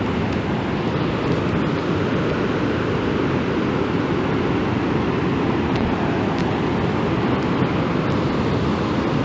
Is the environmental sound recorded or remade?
recorded